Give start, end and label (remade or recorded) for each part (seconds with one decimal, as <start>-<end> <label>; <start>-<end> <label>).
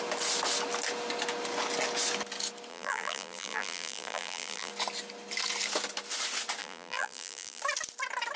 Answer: 0.0-2.7 recorded; 2.7-4.7 remade; 4.7-6.6 recorded; 6.6-7.6 remade; 7.6-8.4 recorded